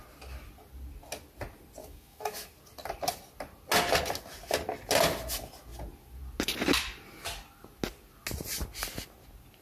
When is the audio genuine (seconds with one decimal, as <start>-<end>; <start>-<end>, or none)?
0.0-1.8; 2.5-9.6